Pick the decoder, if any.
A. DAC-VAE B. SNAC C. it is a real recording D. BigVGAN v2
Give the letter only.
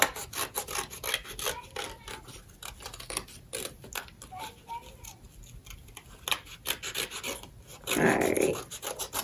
C